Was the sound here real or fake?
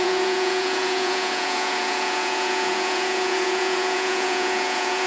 fake